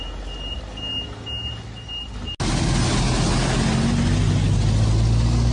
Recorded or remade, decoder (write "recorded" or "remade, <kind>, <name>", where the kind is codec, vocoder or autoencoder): recorded